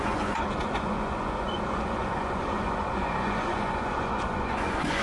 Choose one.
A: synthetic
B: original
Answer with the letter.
A